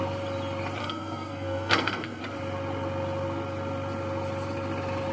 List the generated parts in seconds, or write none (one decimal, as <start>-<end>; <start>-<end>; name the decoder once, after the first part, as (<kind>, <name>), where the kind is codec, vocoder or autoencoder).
0.8-2.2 (codec, SNAC)